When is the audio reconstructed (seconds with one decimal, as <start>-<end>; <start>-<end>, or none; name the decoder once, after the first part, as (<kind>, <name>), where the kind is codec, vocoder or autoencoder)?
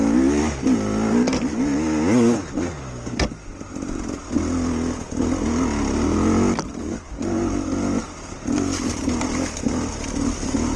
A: none